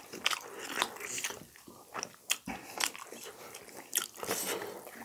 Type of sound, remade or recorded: recorded